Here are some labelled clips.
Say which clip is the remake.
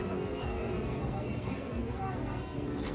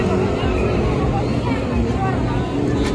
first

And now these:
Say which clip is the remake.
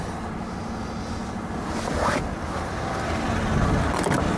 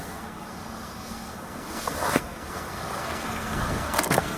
second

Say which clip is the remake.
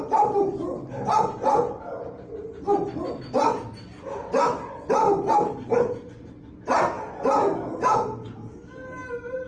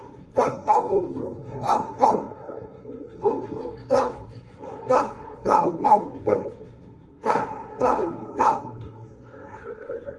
second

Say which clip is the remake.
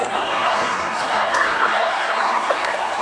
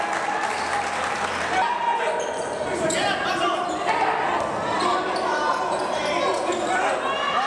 first